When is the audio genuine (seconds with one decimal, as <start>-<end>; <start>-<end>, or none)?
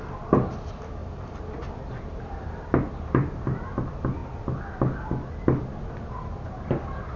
0.0-1.0; 3.8-6.3